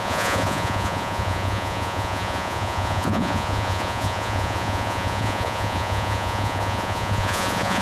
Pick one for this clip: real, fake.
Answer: fake